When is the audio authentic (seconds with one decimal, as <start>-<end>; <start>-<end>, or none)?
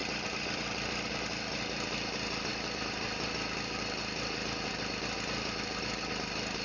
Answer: 1.1-6.6